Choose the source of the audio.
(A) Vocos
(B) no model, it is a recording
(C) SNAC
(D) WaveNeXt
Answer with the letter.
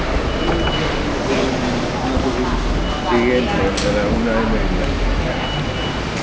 B